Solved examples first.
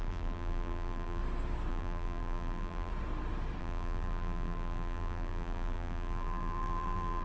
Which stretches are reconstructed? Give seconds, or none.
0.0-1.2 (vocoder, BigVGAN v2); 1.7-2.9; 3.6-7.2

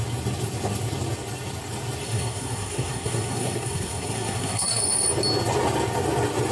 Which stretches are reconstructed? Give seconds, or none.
2.0-4.8 (codec, SNAC)

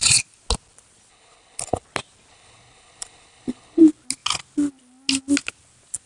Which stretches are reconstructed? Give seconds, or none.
1.1-1.8 (codec, HILCodec); 2.3-3.8